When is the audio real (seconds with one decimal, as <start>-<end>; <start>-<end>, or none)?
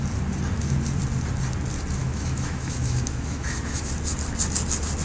0.0-2.0; 3.9-5.0